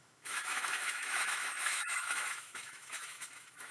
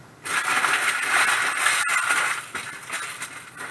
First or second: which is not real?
first